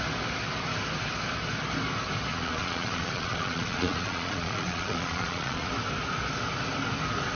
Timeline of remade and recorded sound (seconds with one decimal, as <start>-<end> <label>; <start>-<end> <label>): 0.0-2.3 recorded; 2.3-5.7 remade; 5.7-7.3 recorded